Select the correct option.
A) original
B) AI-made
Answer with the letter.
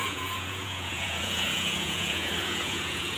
B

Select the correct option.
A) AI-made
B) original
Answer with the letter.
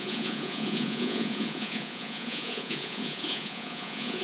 A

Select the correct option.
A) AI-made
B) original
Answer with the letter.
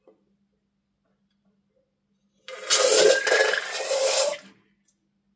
B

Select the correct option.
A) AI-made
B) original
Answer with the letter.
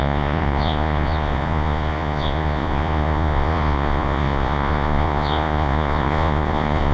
A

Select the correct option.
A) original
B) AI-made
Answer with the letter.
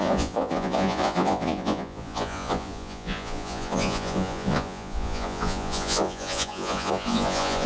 B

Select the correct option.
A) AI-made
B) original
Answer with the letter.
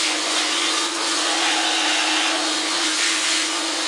A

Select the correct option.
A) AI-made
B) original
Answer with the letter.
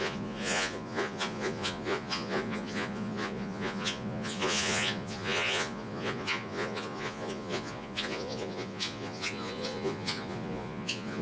A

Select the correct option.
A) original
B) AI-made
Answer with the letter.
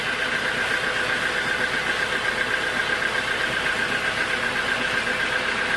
A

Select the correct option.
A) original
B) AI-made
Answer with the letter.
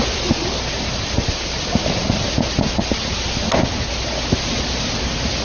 A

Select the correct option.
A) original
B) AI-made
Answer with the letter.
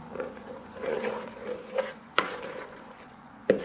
B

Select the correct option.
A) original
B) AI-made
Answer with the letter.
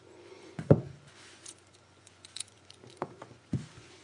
B